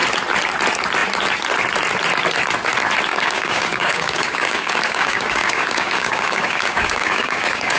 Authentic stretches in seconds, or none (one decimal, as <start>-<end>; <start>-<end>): 0.0-3.1